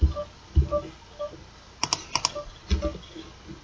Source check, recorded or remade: recorded